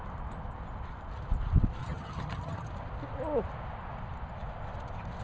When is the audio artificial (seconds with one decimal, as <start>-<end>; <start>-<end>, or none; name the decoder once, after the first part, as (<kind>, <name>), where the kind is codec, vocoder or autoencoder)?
1.8-2.7 (vocoder, HiFi-GAN)

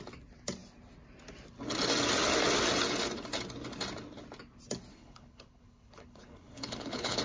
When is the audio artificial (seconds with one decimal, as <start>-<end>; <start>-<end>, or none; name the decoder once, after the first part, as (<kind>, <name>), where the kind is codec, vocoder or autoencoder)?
4.9-7.2 (codec, HILCodec)

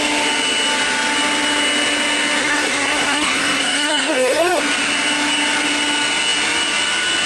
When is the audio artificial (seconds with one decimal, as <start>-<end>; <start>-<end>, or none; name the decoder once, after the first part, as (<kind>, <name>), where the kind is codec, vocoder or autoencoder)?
2.4-4.6 (codec, SNAC)

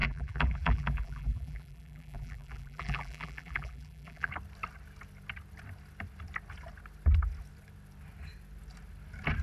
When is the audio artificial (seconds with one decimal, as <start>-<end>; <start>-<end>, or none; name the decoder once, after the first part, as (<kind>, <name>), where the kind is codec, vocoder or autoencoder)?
0.0-4.3 (vocoder, BigVGAN v2)